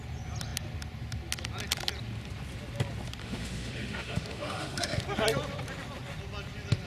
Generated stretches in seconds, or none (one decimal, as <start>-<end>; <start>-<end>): 3.2-5.0